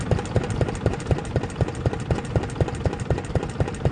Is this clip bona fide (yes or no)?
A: yes